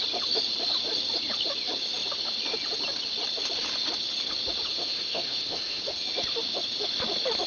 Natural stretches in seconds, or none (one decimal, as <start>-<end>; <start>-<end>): 0.0-4.7; 5.8-7.5